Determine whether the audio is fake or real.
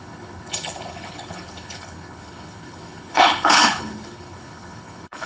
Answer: fake